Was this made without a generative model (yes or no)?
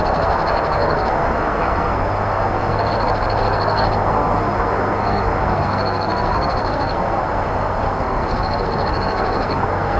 no